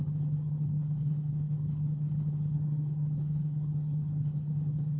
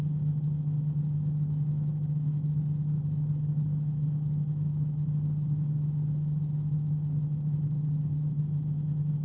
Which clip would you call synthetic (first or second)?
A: first